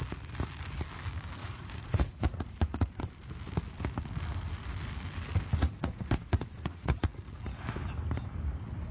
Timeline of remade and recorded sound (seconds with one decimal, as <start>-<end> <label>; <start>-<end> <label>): 0.0-1.4 recorded; 1.4-3.0 remade; 3.0-5.6 recorded; 5.6-7.0 remade; 7.0-8.9 recorded